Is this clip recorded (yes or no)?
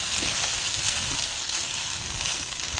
no